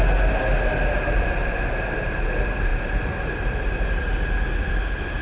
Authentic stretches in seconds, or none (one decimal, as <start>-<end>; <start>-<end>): 0.0-5.2